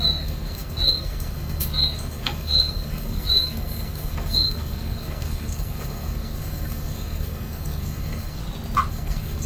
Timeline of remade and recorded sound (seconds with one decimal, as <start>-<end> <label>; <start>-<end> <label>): 0.0-8.4 remade; 8.4-8.9 recorded; 8.9-9.5 remade